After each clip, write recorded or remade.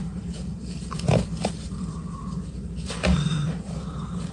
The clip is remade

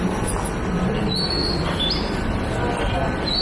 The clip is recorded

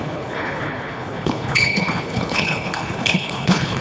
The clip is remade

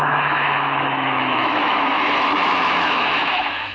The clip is remade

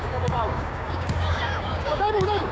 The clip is remade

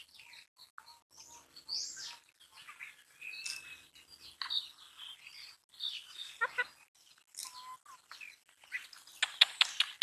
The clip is recorded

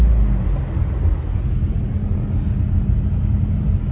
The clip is recorded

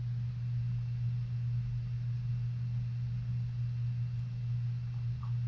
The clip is recorded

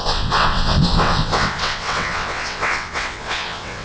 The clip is remade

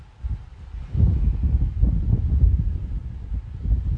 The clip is recorded